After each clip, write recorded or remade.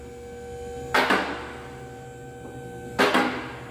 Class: recorded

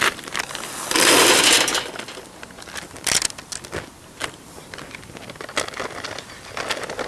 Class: recorded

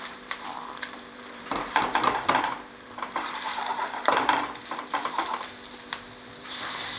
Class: remade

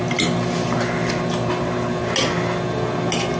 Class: recorded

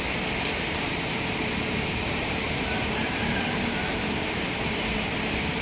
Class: remade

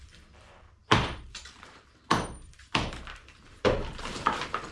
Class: remade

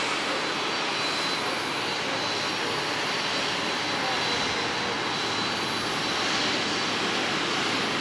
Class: recorded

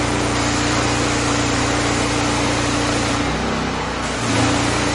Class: remade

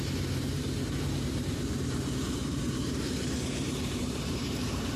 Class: remade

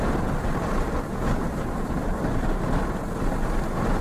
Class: recorded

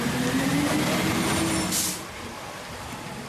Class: recorded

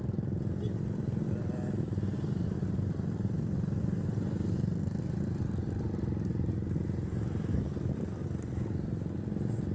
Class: remade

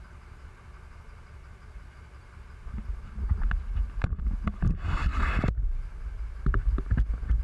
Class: recorded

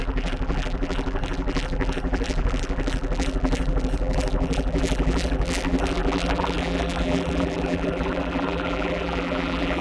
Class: remade